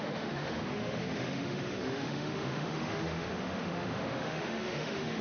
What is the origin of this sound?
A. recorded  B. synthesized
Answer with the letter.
B